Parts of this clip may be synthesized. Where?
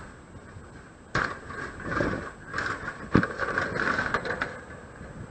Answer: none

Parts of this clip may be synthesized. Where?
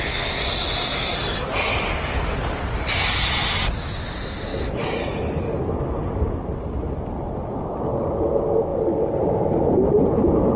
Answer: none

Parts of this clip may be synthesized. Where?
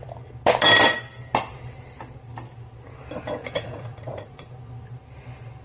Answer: 3.4-4.6 (vocoder, Vocos)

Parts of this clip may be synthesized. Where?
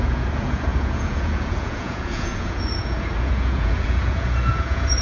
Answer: 0.0-5.0 (vocoder, Vocos)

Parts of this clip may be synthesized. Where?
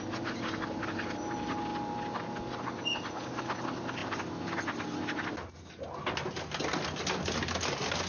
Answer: none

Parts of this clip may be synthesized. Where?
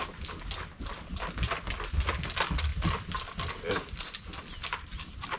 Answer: 2.7-3.7 (vocoder, BigVGAN v2); 4.6-5.4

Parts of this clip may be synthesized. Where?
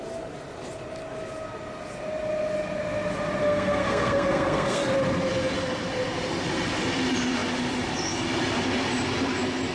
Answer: 3.4-4.9 (codec, SNAC)